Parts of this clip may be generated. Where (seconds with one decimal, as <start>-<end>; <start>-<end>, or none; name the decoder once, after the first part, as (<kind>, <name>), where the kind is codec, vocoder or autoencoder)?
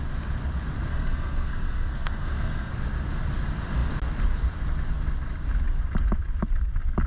0.9-2.7 (codec, SNAC)